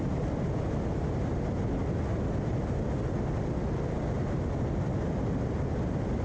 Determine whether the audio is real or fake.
real